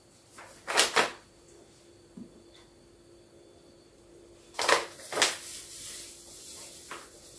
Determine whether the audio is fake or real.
real